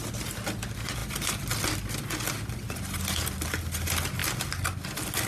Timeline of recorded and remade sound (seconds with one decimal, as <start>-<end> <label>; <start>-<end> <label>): 0.0-5.3 recorded